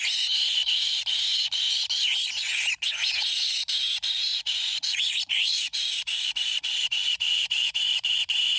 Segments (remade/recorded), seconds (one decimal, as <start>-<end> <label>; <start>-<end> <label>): 0.0-4.3 recorded; 4.3-7.8 remade; 7.8-8.6 recorded